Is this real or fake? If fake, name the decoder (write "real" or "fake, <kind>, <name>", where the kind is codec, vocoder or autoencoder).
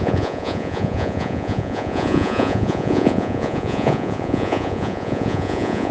fake, vocoder, Vocos